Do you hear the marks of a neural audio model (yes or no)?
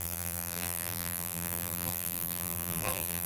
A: yes